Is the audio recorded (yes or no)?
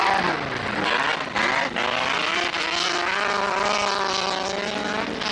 yes